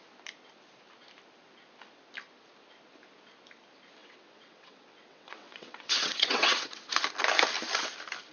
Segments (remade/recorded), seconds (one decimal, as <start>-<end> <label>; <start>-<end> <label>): 0.0-4.0 recorded; 4.0-6.8 remade; 6.8-8.3 recorded